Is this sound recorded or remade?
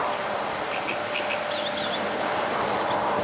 recorded